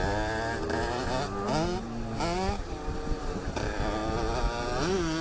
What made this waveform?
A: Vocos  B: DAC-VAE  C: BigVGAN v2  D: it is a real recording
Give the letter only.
D